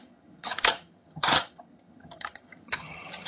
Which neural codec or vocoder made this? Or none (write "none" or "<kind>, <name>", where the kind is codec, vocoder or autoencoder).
vocoder, HiFi-GAN